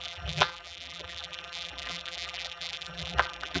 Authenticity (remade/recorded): remade